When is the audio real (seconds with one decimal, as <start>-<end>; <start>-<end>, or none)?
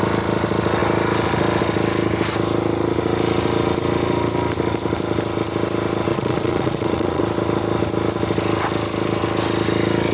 0.0-6.1; 7.2-10.1